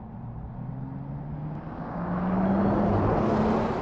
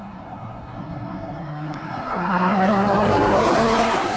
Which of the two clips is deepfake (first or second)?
second